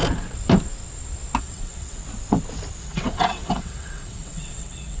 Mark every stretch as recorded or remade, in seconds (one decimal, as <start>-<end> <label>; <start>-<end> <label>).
0.0-1.4 recorded; 1.4-2.0 remade; 2.0-2.8 recorded; 2.8-5.0 remade